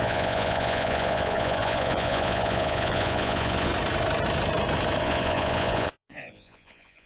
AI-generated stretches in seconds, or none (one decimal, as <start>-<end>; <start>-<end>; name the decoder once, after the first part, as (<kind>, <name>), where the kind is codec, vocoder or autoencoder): 0.0-3.7 (vocoder, Vocos); 5.0-7.1